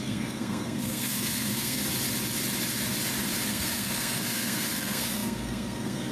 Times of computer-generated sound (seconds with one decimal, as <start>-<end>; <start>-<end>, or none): 0.0-1.8; 3.5-6.1